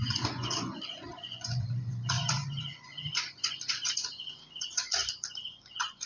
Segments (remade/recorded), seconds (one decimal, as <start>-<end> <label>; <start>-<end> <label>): 0.0-5.0 remade; 5.0-5.5 recorded; 5.5-6.1 remade